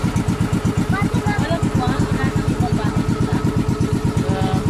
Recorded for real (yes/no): yes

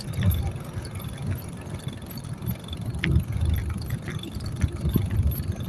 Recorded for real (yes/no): yes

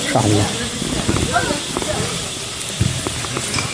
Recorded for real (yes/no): yes